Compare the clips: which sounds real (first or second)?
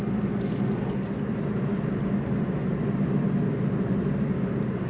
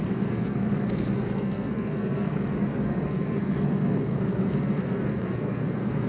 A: first